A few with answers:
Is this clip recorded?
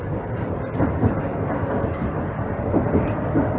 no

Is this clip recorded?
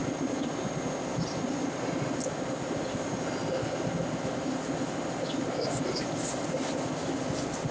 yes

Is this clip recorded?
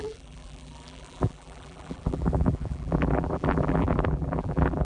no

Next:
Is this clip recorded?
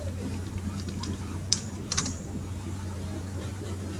no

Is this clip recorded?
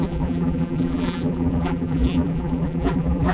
no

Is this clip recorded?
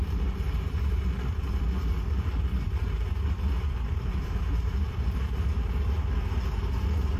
no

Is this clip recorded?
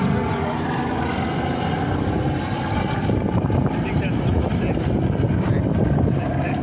no